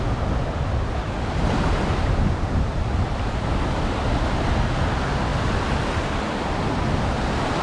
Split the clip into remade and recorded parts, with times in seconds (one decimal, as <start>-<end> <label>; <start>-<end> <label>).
0.0-2.0 recorded; 2.0-3.5 remade; 3.5-7.6 recorded